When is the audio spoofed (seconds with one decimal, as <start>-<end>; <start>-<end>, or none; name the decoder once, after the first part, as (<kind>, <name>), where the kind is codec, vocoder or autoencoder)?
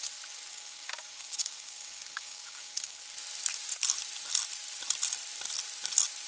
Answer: 0.5-3.0 (codec, DAC)